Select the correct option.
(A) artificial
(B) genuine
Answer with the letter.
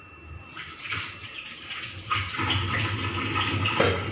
B